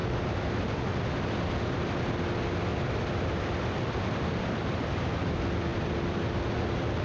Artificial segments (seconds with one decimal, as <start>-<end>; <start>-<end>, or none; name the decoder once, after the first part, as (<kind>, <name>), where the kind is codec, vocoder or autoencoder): 0.0-0.8 (vocoder, BigVGAN v2); 2.7-5.0; 5.7-6.3

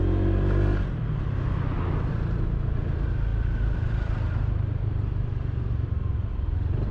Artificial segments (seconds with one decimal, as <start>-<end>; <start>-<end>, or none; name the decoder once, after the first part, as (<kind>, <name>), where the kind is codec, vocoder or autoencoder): 3.3-4.5 (vocoder, BigVGAN v2)

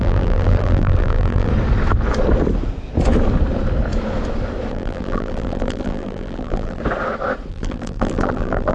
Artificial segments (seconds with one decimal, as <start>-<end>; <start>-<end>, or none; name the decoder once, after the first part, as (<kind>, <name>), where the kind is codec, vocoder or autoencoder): 0.0-1.5 (vocoder, BigVGAN v2); 4.7-6.8; 7.5-8.7

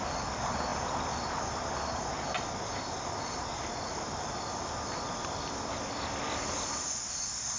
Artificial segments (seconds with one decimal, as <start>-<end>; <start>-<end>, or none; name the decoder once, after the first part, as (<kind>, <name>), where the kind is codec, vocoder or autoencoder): none

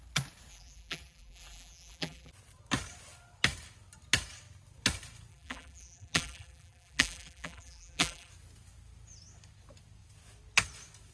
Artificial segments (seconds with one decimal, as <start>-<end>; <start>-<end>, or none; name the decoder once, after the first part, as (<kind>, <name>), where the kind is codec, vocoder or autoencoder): 0.5-2.3 (vocoder, BigVGAN v2); 5.3-8.3

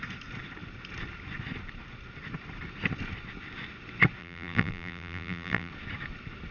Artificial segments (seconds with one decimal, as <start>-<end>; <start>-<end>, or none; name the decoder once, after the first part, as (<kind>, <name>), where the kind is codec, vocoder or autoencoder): 4.2-5.7 (vocoder, BigVGAN v2)

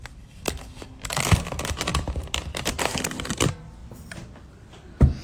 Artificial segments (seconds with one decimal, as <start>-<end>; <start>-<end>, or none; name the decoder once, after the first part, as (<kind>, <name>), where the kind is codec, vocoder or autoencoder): 0.0-0.6 (vocoder, BigVGAN v2); 1.9-2.7; 3.8-4.4

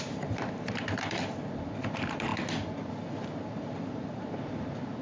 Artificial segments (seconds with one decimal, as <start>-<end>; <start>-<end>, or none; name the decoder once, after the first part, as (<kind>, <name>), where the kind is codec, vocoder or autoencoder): 0.0-2.3 (vocoder, BigVGAN v2); 2.9-5.0